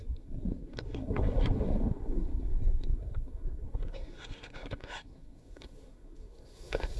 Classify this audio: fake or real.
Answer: fake